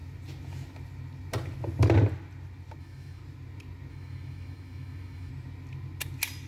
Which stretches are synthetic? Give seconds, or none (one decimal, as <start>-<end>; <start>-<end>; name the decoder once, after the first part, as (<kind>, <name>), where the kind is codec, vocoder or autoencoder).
2.8-3.2 (autoencoder, DAC-VAE); 3.9-5.3